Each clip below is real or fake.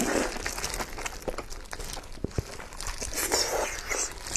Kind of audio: real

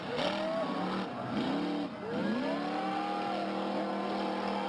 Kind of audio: real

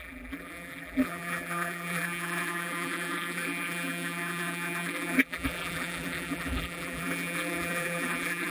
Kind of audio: fake